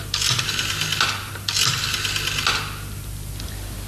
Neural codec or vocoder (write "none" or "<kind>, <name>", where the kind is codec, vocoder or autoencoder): none